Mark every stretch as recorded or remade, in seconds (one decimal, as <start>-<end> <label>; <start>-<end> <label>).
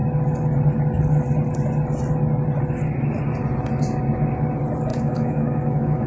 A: 0.0-4.9 recorded; 4.9-6.1 remade